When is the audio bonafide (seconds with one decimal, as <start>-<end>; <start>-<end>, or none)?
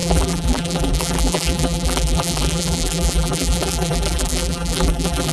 none